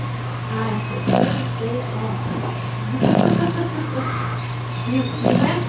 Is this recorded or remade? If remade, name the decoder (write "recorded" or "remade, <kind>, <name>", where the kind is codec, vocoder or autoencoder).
recorded